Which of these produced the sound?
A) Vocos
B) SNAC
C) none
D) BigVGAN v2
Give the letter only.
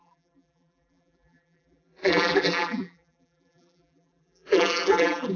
D